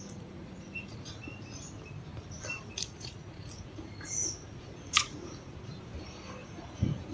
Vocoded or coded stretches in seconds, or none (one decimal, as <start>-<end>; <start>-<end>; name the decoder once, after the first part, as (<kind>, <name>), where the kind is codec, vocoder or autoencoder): 0.0-1.1 (vocoder, Vocos); 2.7-5.7; 6.4-7.1